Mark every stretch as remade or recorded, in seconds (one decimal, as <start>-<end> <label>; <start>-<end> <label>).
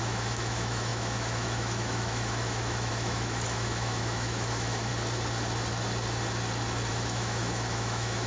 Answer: 0.0-4.9 remade; 4.9-6.9 recorded; 6.9-8.3 remade